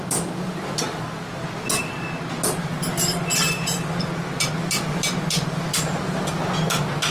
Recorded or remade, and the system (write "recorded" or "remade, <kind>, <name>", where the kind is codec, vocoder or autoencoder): recorded